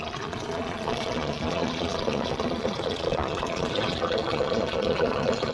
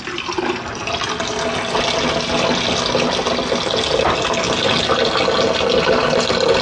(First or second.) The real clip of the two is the second